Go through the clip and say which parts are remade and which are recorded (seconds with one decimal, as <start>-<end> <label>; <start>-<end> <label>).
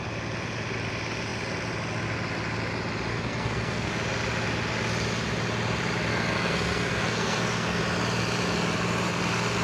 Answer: 0.0-3.1 recorded; 3.1-3.9 remade; 3.9-6.1 recorded; 6.1-7.8 remade; 7.8-9.6 recorded